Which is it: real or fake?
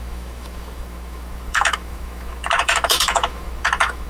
fake